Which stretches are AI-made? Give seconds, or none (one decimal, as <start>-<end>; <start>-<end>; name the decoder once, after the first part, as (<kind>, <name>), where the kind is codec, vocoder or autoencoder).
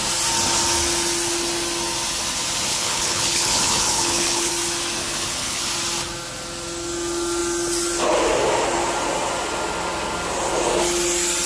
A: 2.7-4.5 (codec, HILCodec); 5.0-5.6